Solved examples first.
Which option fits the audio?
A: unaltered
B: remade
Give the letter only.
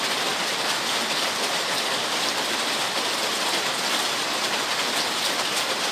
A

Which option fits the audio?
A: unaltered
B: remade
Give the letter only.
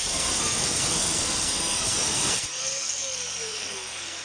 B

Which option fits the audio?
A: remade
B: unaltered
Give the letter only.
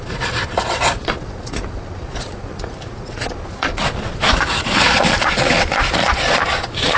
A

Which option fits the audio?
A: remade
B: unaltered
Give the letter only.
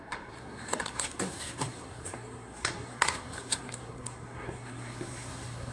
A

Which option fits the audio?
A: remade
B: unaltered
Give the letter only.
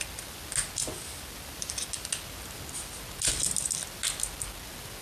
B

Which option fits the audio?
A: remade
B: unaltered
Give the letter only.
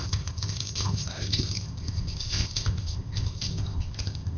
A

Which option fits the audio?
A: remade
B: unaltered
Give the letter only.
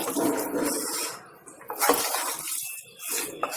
B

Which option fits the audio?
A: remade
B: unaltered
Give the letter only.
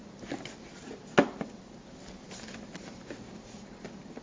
B